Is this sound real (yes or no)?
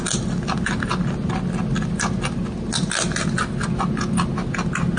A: yes